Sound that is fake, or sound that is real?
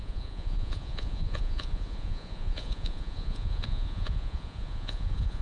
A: fake